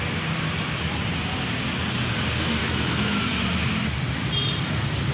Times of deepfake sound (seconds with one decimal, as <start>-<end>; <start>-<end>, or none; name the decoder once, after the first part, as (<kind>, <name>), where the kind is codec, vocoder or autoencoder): 2.6-3.2 (autoencoder, DAC-VAE)